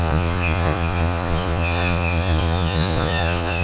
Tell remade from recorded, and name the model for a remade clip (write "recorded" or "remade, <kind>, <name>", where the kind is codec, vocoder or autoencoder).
remade, vocoder, Vocos